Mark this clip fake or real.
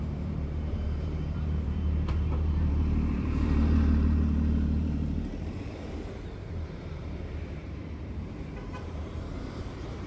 fake